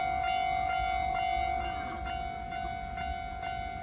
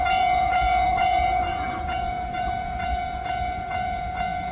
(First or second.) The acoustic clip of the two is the first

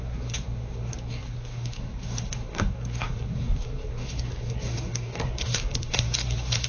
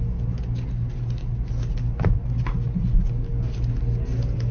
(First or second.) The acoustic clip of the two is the second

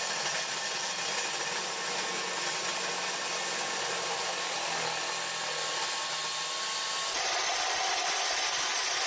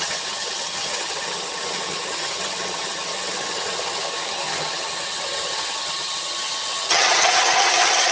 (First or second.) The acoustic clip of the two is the first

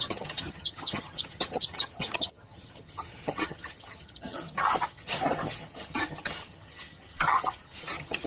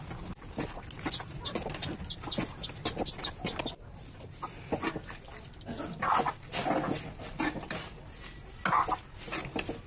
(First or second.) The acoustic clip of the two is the second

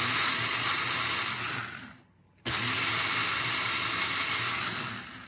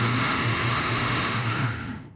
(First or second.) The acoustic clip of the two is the first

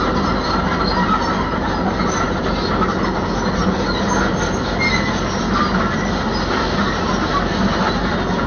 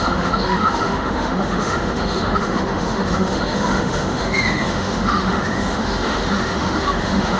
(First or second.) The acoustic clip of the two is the first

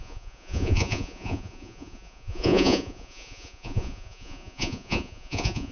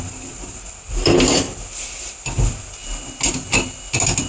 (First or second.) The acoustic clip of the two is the second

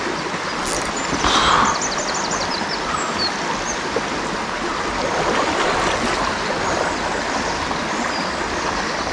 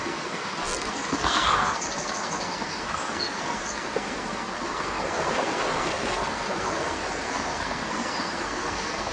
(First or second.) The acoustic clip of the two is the first